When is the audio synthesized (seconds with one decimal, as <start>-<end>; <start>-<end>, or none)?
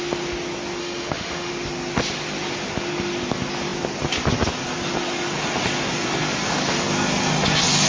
0.8-1.5